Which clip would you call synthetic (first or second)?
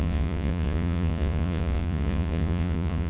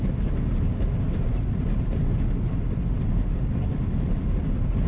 first